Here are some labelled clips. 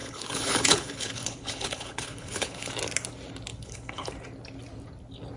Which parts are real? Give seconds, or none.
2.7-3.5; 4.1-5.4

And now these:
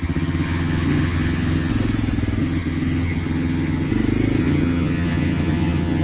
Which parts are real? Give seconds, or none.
1.7-2.4; 3.9-4.4

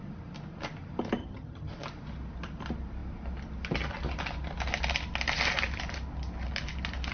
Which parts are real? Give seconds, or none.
0.0-1.2; 1.7-7.1

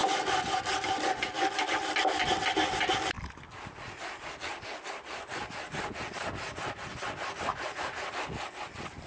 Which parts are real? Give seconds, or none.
0.0-7.5; 8.1-9.1

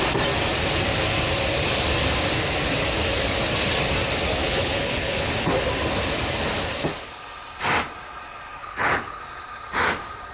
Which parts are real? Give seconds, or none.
0.0-4.4; 5.3-8.6; 9.2-10.3